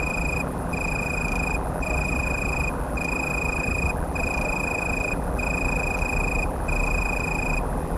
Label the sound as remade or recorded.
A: remade